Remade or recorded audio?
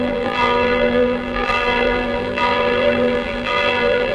remade